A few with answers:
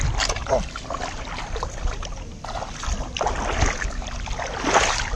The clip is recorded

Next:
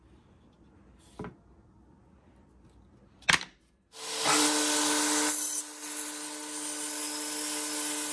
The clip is recorded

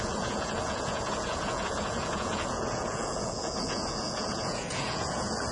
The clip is remade